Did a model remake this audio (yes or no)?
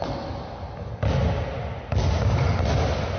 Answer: no